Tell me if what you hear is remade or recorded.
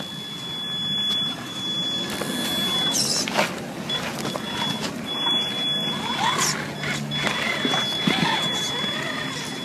recorded